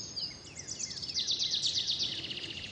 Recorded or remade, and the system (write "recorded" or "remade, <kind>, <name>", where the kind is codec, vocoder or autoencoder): recorded